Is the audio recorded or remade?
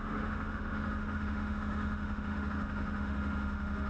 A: remade